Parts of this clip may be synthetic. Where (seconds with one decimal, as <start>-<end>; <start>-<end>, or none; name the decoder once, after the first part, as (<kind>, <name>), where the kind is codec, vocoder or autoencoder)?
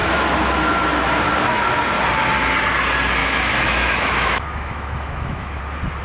3.2-5.6 (autoencoder, DAC-VAE)